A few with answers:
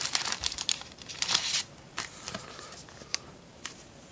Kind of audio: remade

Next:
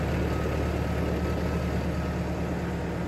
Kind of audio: recorded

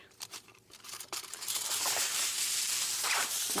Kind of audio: remade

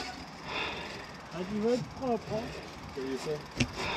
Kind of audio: recorded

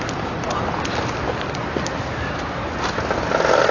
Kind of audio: recorded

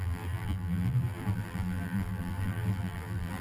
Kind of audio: remade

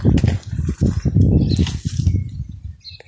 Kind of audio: recorded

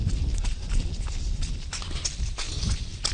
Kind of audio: recorded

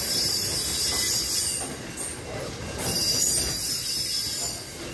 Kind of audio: recorded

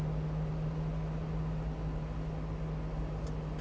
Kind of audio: recorded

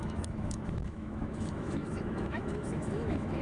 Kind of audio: remade